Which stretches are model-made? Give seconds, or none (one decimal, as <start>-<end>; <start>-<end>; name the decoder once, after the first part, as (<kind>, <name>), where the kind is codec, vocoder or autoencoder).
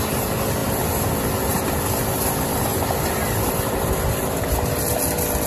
none